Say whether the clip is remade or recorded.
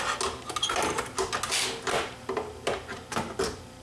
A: recorded